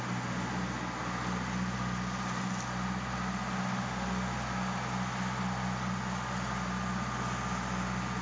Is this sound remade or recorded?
recorded